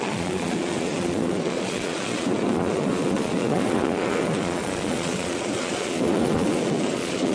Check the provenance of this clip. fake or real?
fake